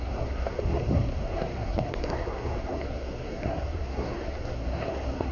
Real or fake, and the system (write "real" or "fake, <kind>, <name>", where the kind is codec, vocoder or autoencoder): fake, codec, SNAC